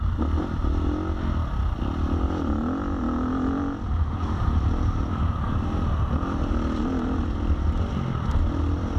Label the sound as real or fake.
real